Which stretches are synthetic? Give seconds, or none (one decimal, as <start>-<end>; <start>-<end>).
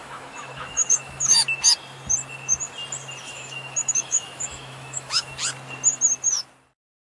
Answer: 0.0-1.4; 3.2-5.3